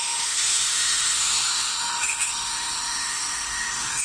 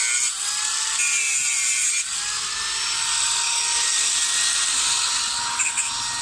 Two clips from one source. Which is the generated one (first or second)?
first